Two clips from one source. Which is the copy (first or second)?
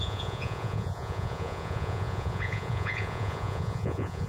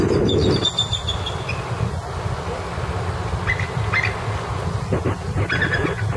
first